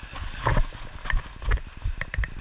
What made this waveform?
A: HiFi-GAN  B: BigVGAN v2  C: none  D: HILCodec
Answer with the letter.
C